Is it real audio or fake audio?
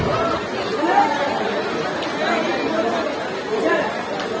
real